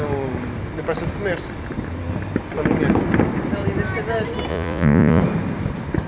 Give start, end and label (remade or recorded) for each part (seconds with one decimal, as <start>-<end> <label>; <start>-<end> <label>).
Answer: 0.0-4.5 recorded; 4.5-5.2 remade; 5.2-6.1 recorded